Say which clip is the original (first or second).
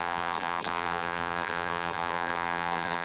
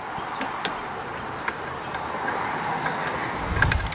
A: second